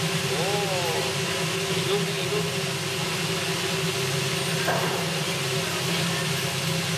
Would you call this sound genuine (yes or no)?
yes